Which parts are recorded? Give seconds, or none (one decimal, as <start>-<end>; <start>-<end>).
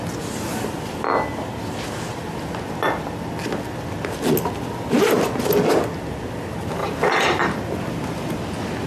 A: 0.0-6.8; 8.1-8.9